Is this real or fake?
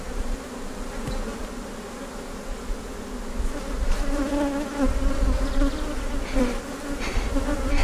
real